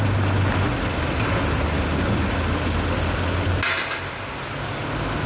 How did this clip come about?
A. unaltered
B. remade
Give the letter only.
A